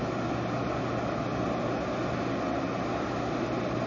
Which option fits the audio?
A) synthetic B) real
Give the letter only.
B